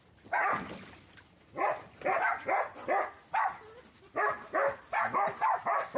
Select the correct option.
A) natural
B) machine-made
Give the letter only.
A